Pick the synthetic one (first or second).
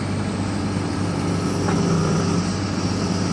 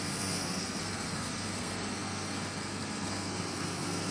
second